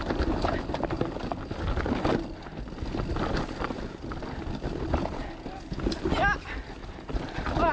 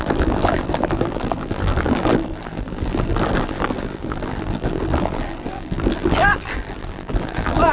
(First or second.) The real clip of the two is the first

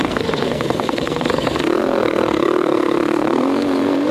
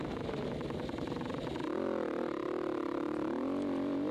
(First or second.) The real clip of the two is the second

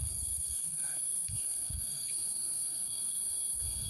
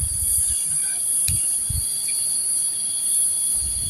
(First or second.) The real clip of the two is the second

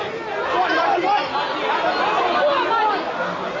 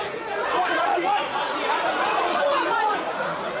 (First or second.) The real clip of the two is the first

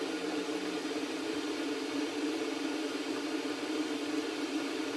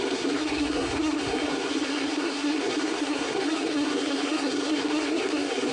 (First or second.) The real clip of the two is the first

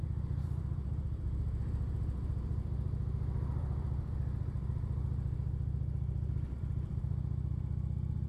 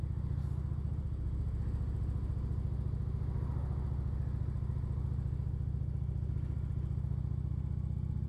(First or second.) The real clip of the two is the second